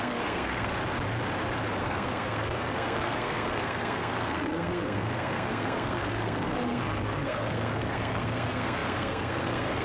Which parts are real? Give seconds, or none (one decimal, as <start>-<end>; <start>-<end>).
0.7-1.8